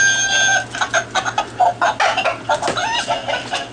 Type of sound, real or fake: real